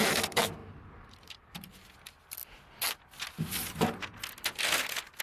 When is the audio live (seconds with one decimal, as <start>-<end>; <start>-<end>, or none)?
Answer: 0.0-0.6; 1.7-5.2